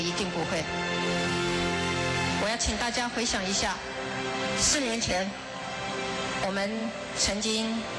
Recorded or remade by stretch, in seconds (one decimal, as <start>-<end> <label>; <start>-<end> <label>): 0.0-1.3 recorded; 1.3-2.3 remade; 2.3-4.7 recorded; 4.7-5.6 remade; 5.6-8.0 recorded